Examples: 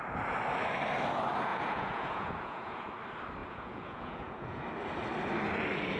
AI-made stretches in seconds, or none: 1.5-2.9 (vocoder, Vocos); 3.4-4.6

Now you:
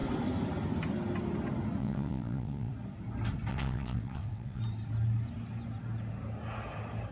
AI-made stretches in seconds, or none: 1.8-2.7 (vocoder, WaveNeXt); 3.5-4.6

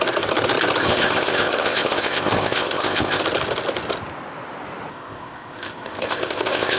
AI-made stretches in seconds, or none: 0.8-3.2 (codec, ZipCodec); 4.9-6.8

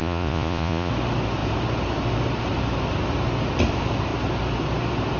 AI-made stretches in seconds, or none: 0.0-0.9 (vocoder, Vocos)

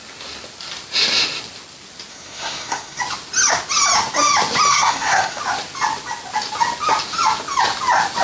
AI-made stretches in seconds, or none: 2.1-3.0 (codec, SNAC); 4.7-5.4

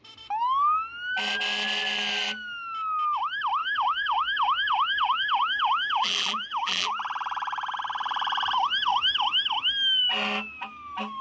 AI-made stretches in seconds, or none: 3.6-6.9 (vocoder, BigVGAN v2)

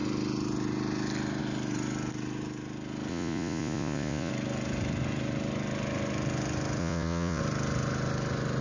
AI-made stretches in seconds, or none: 3.1-4.3 (vocoder, Vocos); 6.8-7.4

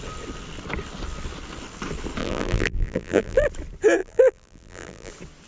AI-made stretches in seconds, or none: 2.2-3.5 (vocoder, BigVGAN v2); 4.0-5.1